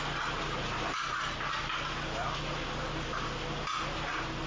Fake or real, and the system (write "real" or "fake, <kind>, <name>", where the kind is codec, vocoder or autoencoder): real